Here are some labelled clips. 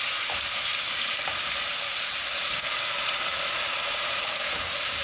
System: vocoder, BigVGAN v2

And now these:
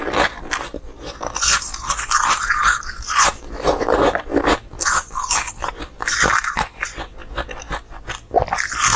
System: none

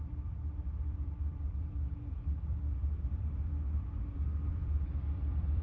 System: vocoder, BigVGAN v2